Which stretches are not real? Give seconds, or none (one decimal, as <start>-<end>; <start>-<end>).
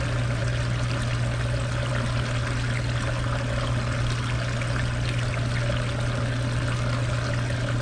none